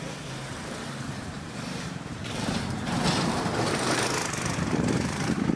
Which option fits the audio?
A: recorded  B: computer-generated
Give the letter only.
B